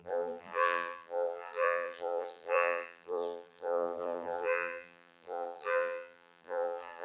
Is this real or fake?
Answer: fake